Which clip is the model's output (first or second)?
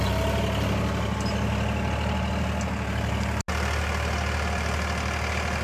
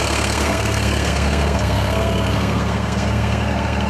second